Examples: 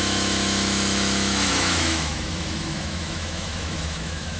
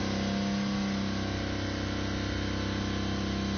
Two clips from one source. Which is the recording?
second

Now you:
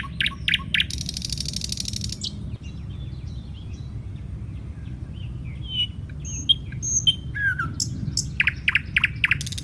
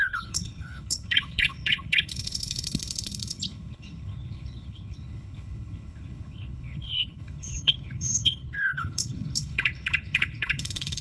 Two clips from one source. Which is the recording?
first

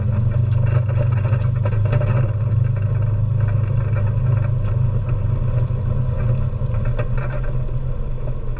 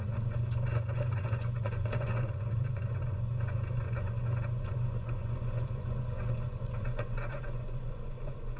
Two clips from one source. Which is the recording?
first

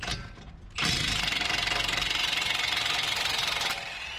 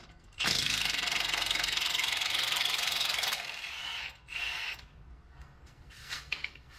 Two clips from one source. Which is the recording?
first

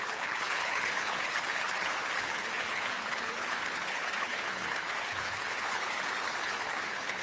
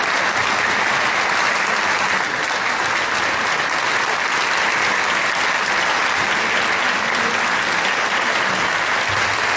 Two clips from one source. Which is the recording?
second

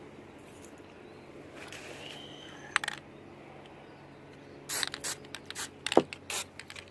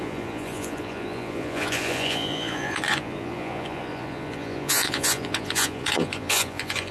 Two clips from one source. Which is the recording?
first